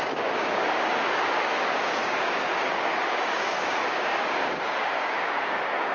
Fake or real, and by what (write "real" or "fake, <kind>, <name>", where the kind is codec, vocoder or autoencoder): fake, codec, DAC